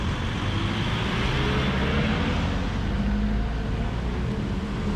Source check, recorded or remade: recorded